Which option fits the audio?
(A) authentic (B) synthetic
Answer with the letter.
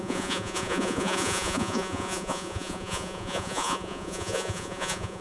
B